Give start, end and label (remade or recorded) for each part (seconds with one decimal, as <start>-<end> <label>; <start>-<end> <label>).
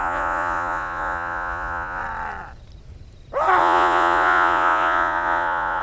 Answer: 0.0-2.0 remade; 2.0-3.6 recorded; 3.6-5.8 remade